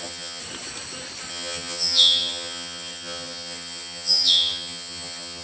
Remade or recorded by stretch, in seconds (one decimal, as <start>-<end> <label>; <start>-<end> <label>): 0.0-0.4 remade; 0.4-1.3 recorded; 1.3-5.4 remade